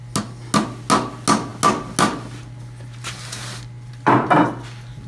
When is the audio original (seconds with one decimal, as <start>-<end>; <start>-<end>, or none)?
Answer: 0.0-5.1